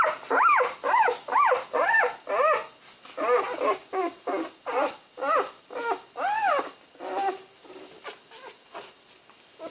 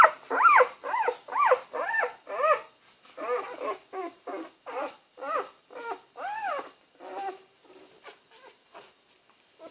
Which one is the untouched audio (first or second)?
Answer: first